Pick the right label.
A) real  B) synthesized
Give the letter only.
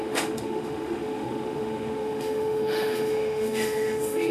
B